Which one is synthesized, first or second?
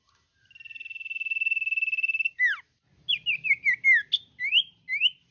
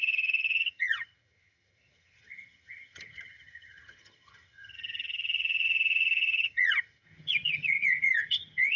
second